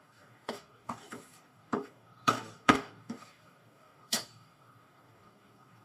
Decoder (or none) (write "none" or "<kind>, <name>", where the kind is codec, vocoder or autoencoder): codec, DAC